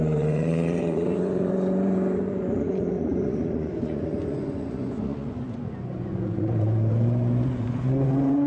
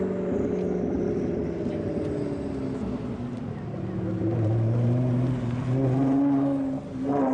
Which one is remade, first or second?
first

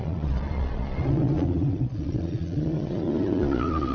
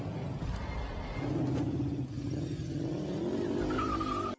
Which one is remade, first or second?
first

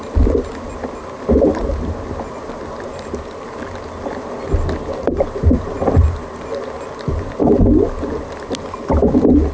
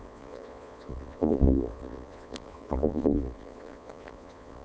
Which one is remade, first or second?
second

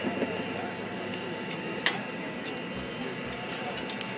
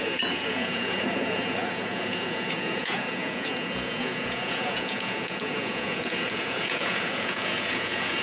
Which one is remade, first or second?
second